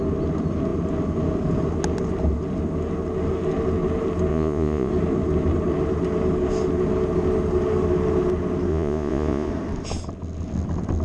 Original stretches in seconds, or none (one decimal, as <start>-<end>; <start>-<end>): 0.0-4.3; 4.9-8.7; 9.5-11.0